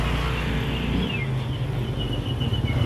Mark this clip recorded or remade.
recorded